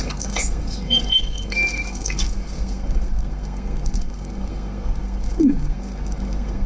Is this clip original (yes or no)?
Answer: no